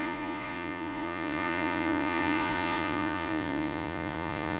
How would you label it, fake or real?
fake